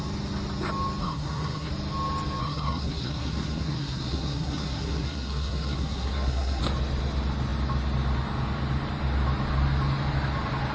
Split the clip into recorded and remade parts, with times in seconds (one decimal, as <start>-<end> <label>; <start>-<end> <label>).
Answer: 0.0-1.0 recorded; 1.0-1.7 remade; 1.7-2.4 recorded; 2.4-6.6 remade; 6.6-10.7 recorded

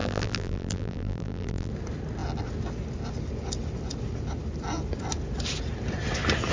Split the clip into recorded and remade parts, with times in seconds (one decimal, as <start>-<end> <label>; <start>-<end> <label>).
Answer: 0.0-1.7 remade; 1.7-6.5 recorded

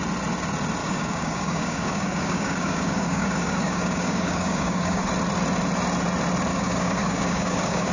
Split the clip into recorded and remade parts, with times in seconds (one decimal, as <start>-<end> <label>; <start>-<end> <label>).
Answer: 0.0-0.8 recorded; 0.8-5.1 remade; 5.1-6.5 recorded; 6.5-7.9 remade